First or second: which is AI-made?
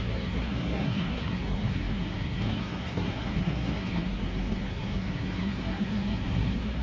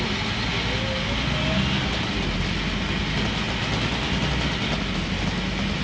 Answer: first